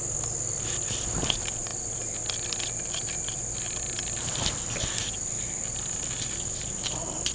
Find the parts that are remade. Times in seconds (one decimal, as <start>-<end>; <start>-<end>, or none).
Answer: none